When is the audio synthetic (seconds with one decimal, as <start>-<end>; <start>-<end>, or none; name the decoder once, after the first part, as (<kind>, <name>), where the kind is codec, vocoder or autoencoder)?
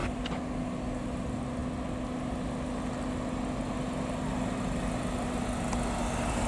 0.0-0.6 (vocoder, BigVGAN v2)